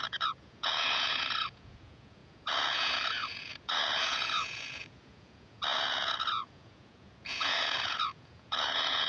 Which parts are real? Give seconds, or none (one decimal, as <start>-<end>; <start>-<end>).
none